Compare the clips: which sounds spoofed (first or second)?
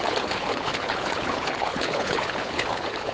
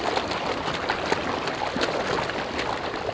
first